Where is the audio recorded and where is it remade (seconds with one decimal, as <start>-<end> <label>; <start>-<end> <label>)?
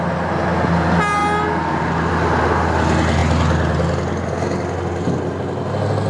0.0-6.1 recorded